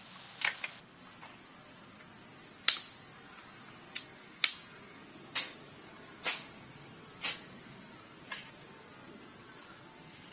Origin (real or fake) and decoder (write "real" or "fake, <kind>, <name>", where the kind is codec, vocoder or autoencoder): real